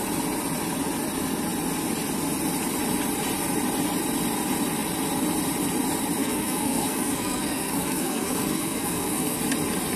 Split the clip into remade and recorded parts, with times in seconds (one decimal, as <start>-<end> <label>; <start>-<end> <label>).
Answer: 0.0-6.2 recorded; 6.2-9.4 remade; 9.4-10.0 recorded